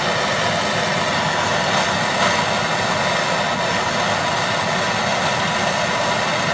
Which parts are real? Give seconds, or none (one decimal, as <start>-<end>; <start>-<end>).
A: 0.0-6.5